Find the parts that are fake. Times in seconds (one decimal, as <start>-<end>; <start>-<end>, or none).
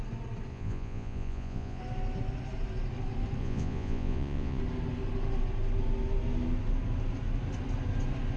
0.5-1.8; 3.4-4.6